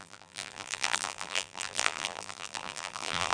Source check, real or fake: fake